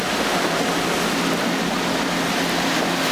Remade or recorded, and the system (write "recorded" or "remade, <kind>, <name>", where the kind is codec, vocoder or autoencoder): recorded